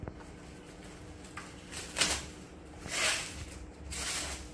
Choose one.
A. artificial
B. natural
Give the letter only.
B